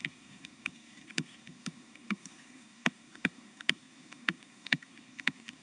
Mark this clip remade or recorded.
remade